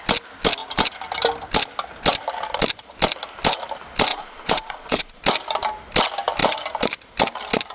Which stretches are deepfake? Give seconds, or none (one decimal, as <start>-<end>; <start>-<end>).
4.1-5.2